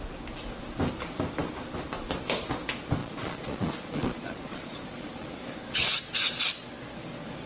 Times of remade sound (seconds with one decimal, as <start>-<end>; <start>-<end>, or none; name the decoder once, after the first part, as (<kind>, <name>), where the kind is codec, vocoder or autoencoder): 3.0-5.3 (vocoder, Vocos)